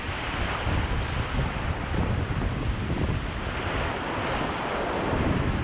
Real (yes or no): yes